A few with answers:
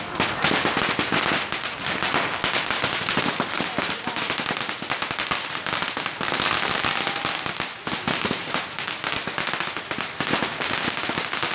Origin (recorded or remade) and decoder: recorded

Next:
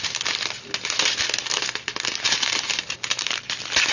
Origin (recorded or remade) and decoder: recorded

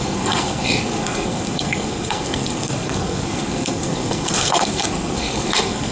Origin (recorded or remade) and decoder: remade, codec, SNAC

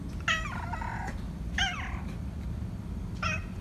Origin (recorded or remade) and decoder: recorded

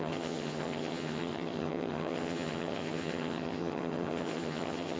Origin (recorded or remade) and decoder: remade, vocoder, HiFi-GAN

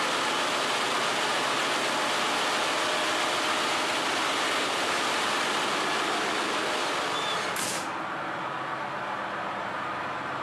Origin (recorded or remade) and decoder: recorded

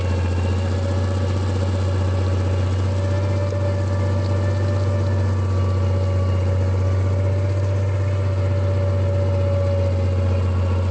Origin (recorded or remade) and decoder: recorded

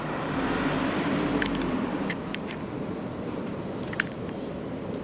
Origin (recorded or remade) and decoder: remade, vocoder, BigVGAN v2